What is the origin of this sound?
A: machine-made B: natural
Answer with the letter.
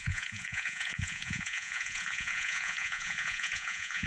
A